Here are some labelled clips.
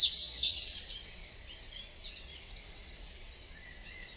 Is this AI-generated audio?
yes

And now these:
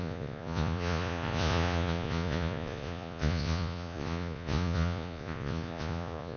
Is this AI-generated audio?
yes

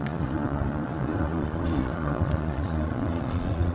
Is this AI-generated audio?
yes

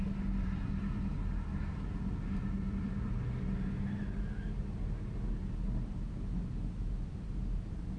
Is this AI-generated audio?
no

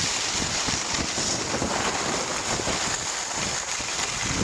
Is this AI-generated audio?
no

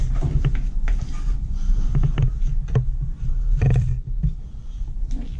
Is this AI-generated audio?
no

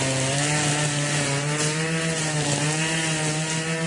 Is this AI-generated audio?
no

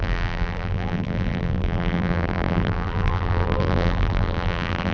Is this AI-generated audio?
yes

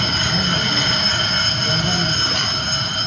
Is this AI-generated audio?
no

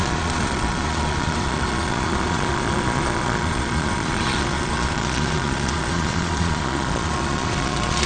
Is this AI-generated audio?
yes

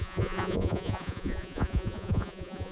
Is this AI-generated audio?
yes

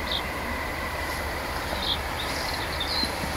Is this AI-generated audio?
yes